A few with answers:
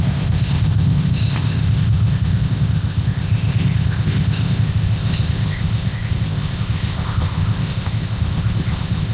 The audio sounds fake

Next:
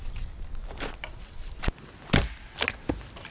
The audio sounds real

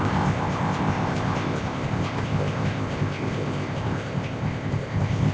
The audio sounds fake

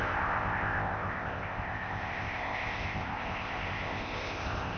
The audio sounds fake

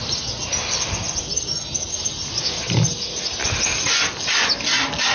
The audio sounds real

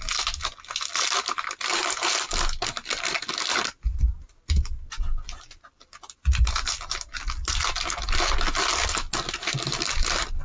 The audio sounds real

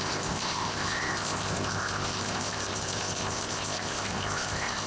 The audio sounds fake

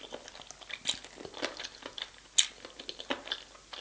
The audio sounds real